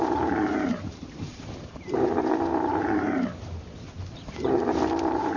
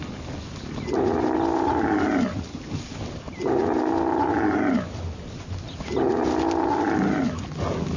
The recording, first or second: second